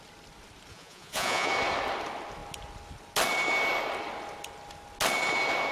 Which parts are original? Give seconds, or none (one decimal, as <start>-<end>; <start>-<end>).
0.0-0.7; 1.5-5.7